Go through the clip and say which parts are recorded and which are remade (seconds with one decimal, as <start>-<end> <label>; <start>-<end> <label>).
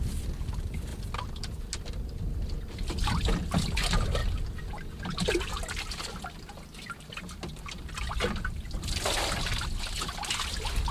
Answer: 0.0-10.9 recorded